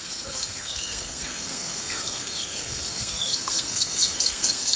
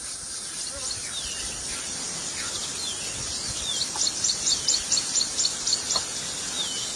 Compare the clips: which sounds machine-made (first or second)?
first